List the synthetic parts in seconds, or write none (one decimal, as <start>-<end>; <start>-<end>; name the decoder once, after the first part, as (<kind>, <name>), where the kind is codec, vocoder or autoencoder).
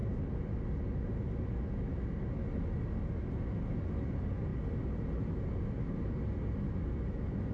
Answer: none